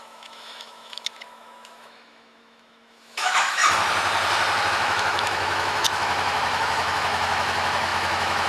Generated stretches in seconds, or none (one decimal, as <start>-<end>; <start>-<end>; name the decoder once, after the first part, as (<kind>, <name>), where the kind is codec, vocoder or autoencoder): 0.0-3.6 (autoencoder, DAC-VAE); 4.7-8.5